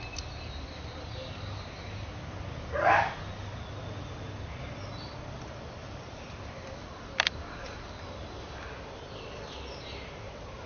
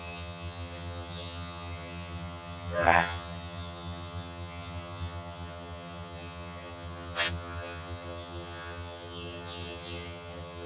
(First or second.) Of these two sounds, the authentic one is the first